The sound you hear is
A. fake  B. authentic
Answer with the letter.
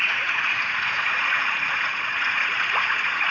A